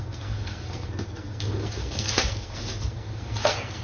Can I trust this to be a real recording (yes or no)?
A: no